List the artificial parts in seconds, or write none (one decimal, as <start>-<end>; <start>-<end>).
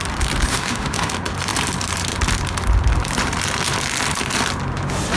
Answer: 0.5-1.1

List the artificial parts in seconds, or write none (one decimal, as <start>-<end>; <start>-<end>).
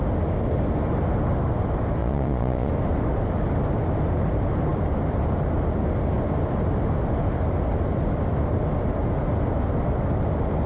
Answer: 2.0-2.7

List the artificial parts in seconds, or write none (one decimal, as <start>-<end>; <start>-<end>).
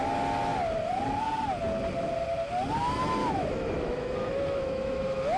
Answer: 3.2-5.4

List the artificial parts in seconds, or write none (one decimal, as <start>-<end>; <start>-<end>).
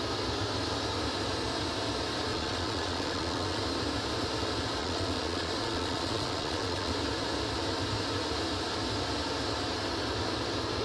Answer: 2.3-3.6; 4.8-6.9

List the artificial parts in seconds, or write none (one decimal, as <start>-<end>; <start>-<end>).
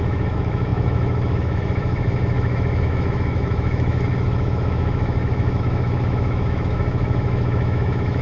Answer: 0.0-8.2